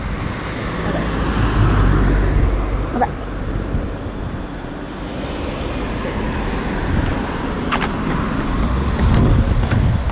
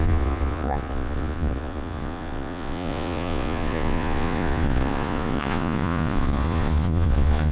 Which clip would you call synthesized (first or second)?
second